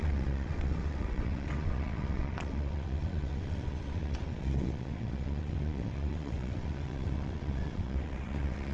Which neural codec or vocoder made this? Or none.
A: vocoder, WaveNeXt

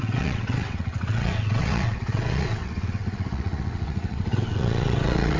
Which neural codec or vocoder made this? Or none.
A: vocoder, WaveNeXt